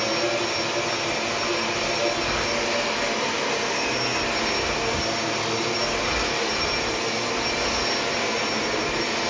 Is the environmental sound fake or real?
real